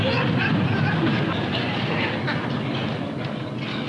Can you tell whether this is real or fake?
real